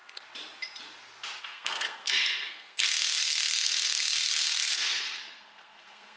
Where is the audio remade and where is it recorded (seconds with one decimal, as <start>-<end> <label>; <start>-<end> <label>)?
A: 0.0-1.4 recorded; 1.4-6.2 remade